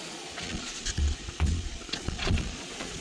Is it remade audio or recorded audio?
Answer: remade